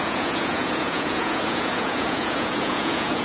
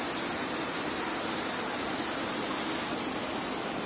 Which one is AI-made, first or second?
first